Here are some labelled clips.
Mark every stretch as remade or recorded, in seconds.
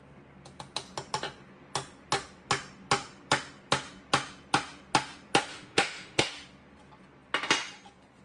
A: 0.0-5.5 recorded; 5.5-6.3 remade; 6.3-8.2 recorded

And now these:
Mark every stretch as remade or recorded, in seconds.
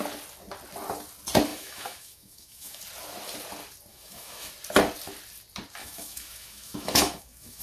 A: 0.0-1.5 recorded; 1.5-2.8 remade; 2.8-3.9 recorded; 3.9-4.5 remade; 4.5-5.8 recorded; 5.8-7.6 remade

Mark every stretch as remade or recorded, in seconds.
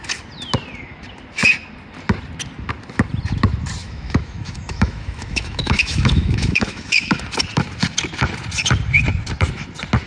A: 0.0-3.8 recorded; 3.8-7.2 remade; 7.2-10.1 recorded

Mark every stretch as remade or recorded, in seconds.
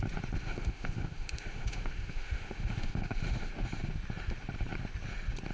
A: 0.0-0.4 recorded; 0.4-3.5 remade; 3.5-5.5 recorded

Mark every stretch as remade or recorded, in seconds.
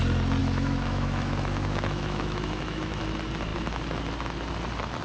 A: 0.0-0.4 recorded; 0.4-3.0 remade; 3.0-5.0 recorded